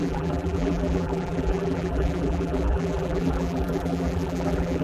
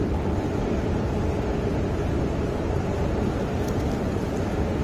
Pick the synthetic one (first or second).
first